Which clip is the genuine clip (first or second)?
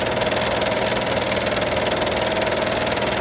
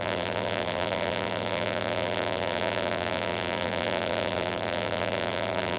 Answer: first